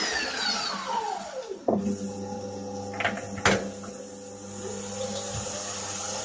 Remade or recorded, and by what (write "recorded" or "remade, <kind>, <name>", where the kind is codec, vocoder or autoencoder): recorded